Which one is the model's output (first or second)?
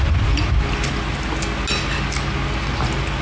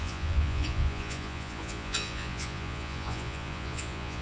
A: second